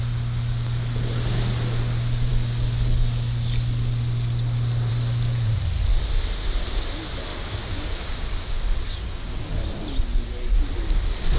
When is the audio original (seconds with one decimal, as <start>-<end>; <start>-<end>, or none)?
0.0-7.3; 9.5-11.4